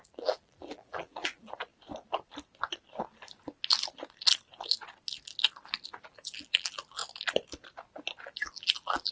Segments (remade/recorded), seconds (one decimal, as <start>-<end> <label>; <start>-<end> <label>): 0.0-1.7 remade; 1.7-5.9 recorded; 5.9-7.0 remade; 7.0-8.2 recorded; 8.2-9.1 remade